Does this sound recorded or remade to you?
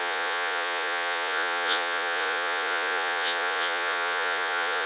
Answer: remade